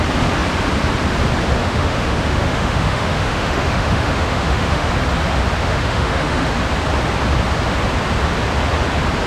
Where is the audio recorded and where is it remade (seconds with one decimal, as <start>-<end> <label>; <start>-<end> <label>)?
0.0-1.6 recorded; 1.6-4.9 remade; 4.9-5.6 recorded; 5.6-6.5 remade; 6.5-9.3 recorded